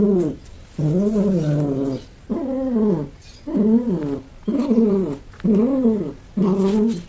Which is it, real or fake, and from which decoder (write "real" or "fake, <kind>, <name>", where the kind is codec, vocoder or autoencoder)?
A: real